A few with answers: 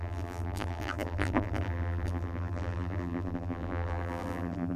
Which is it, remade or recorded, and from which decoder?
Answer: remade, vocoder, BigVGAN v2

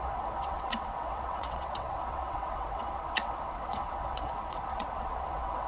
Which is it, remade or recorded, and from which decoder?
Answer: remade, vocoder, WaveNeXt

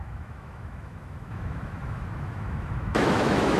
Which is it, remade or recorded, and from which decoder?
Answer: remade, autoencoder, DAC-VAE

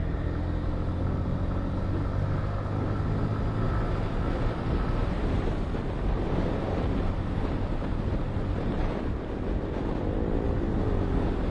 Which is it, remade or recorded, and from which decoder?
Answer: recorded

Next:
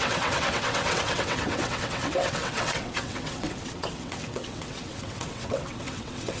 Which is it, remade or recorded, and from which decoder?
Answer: remade, vocoder, WaveNeXt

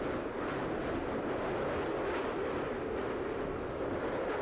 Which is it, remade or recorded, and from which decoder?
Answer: recorded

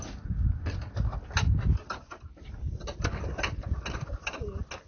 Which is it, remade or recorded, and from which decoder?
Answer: recorded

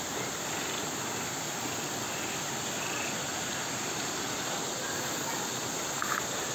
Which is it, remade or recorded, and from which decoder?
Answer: recorded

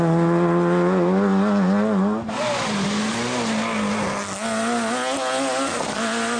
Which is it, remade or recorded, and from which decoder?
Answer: recorded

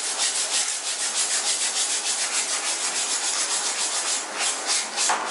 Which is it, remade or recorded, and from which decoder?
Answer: recorded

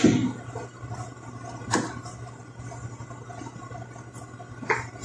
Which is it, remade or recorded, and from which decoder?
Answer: recorded